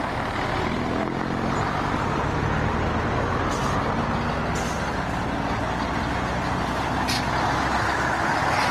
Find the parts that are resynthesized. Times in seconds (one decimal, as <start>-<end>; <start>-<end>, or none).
none